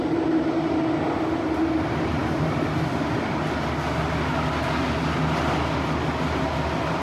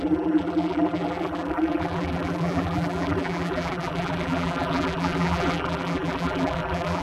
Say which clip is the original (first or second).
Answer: first